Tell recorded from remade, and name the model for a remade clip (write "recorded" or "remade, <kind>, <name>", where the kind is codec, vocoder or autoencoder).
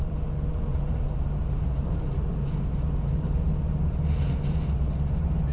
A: remade, vocoder, BigVGAN v2